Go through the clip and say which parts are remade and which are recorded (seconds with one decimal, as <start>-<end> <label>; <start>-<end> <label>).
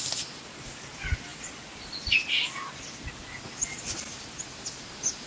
0.0-5.3 recorded